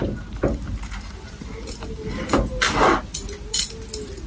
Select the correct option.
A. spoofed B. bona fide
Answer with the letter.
B